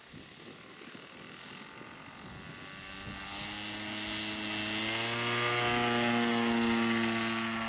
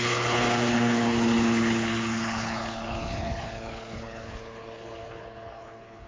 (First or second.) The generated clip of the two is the second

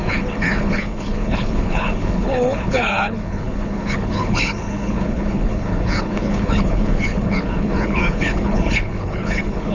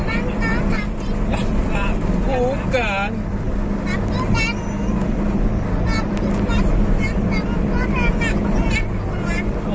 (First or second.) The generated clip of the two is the first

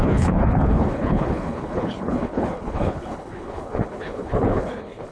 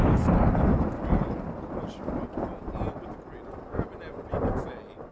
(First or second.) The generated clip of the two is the first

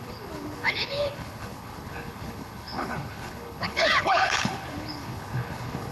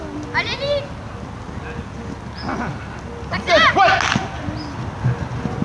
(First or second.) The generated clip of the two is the first